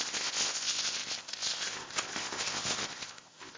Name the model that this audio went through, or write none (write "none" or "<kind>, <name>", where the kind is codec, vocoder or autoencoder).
codec, ZipCodec